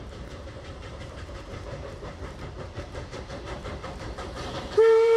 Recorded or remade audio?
remade